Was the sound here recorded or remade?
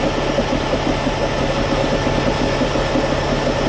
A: recorded